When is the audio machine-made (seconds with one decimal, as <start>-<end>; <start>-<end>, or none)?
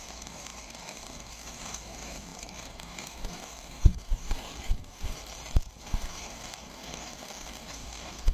0.0-5.2; 5.8-8.3